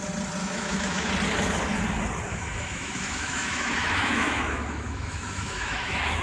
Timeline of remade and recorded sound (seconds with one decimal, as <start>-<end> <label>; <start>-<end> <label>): 0.0-0.4 recorded; 0.4-1.1 remade; 1.1-2.3 recorded; 2.3-6.2 remade